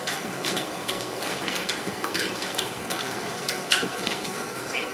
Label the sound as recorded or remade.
remade